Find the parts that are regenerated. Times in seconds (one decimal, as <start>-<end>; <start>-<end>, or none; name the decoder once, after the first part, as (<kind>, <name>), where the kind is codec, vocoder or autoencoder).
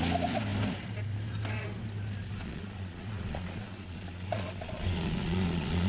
2.4-5.9 (vocoder, Vocos)